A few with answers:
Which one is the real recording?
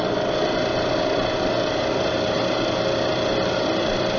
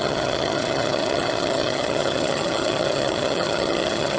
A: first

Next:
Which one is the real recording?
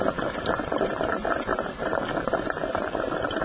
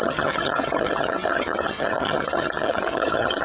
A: first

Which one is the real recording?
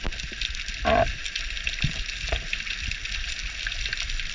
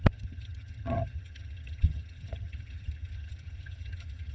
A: first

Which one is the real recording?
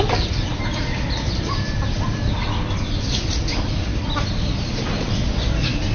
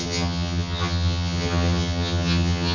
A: first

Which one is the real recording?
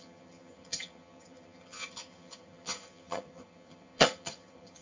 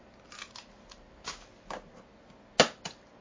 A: second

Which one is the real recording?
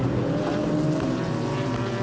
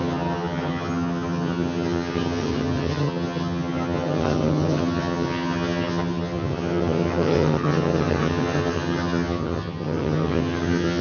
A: first